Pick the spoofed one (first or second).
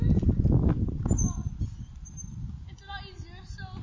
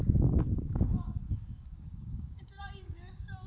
second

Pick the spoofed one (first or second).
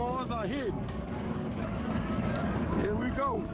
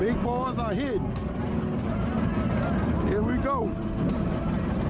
first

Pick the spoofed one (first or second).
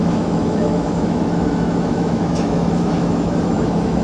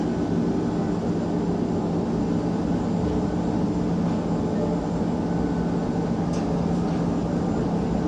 first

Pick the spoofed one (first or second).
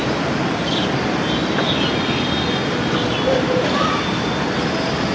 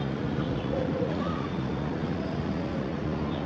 second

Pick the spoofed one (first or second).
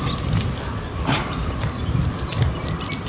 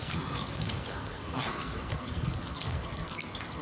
second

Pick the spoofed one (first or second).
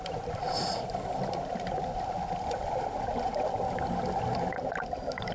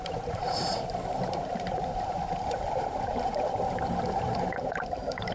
second